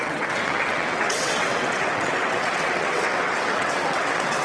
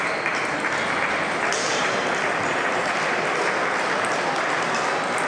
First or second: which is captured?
second